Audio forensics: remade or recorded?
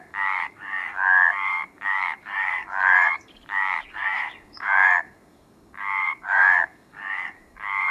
remade